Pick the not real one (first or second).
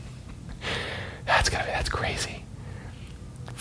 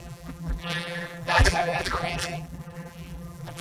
second